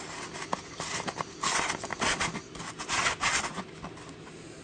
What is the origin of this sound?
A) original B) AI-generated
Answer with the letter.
A